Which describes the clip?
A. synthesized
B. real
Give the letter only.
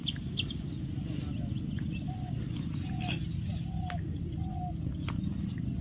B